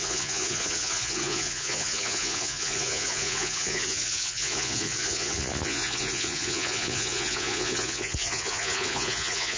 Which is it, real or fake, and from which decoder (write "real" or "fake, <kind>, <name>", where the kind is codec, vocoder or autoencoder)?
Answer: fake, vocoder, Vocos